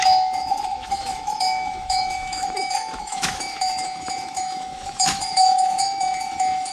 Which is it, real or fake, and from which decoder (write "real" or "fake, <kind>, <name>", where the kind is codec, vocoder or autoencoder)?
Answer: fake, autoencoder, DAC-VAE